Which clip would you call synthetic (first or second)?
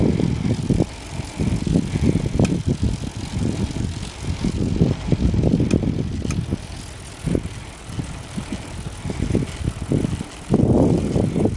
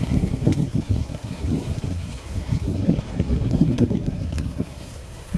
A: second